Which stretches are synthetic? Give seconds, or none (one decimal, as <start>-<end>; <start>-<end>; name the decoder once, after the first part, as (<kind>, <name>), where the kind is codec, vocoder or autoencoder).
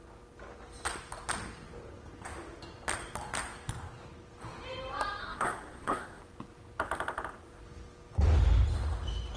5.2-6.2 (codec, SNAC)